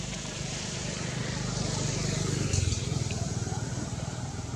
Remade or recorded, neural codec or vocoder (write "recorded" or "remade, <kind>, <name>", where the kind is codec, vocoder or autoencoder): remade, vocoder, BigVGAN v2